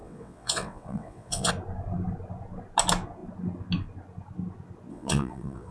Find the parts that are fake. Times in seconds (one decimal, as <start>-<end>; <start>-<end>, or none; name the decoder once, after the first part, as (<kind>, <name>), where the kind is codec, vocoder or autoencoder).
0.0-1.5 (vocoder, WaveNeXt); 4.9-5.7